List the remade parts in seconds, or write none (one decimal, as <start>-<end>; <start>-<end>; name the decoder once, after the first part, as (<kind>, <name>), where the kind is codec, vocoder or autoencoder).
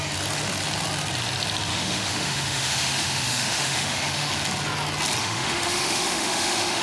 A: 1.7-4.3 (autoencoder, DAC-VAE); 5.2-6.8